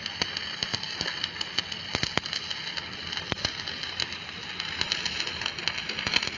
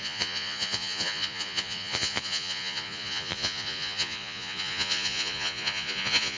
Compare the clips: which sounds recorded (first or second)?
first